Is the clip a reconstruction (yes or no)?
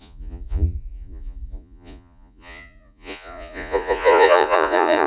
yes